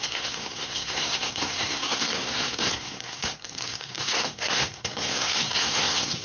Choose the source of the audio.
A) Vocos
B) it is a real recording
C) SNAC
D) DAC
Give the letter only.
C